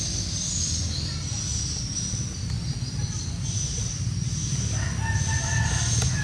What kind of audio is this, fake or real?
real